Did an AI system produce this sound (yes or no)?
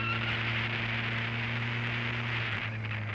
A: no